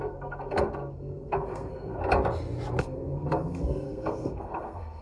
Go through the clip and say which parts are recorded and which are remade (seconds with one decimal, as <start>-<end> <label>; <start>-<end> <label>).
0.0-2.0 remade; 2.0-2.8 recorded; 2.8-5.0 remade